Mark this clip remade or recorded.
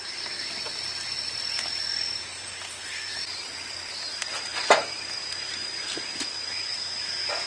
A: recorded